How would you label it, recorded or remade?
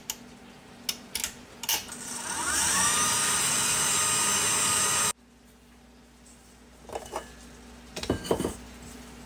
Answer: recorded